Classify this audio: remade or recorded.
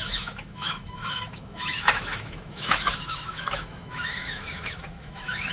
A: remade